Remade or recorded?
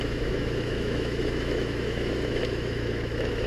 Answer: remade